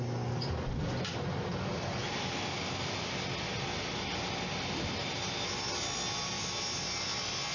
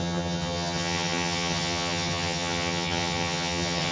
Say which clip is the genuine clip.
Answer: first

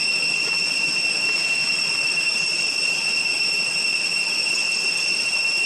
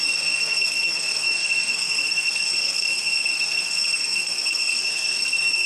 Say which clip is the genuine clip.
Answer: first